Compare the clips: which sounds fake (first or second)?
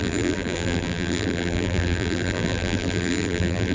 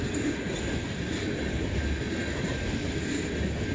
first